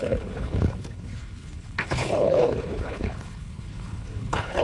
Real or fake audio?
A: fake